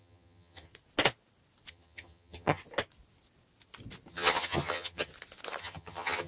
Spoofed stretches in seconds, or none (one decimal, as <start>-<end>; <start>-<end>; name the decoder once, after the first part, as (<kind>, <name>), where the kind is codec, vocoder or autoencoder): 0.0-0.7 (vocoder, HiFi-GAN); 1.7-2.6; 4.1-5.1; 5.6-6.3